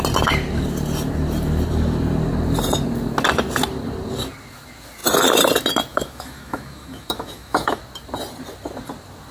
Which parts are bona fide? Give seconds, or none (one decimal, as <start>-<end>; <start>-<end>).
0.0-5.9; 7.8-9.3